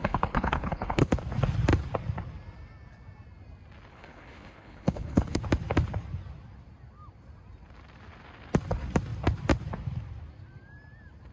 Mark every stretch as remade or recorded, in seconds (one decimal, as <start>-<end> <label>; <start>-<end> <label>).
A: 0.0-1.1 remade; 1.1-3.9 recorded; 3.9-5.4 remade; 5.4-11.3 recorded